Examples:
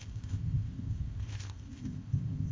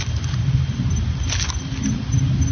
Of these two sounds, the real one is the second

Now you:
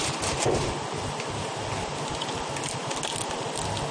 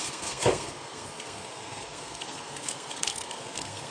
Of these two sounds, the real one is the first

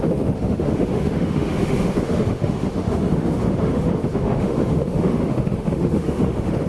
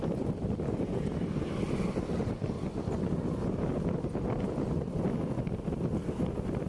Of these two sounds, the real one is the second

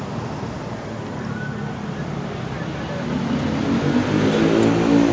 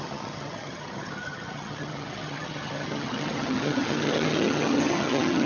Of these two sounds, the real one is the first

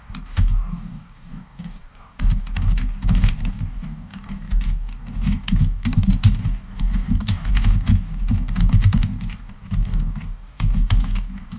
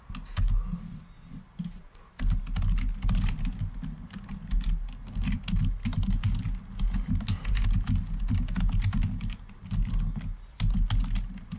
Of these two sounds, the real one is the second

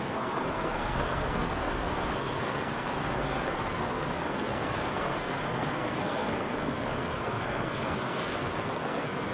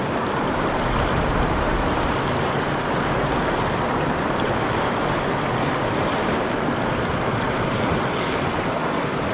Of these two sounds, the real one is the second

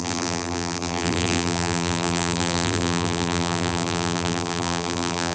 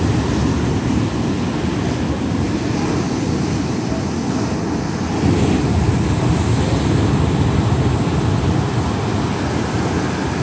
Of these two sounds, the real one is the second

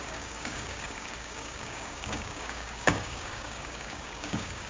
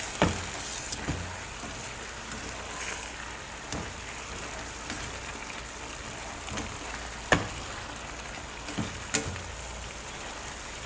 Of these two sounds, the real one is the second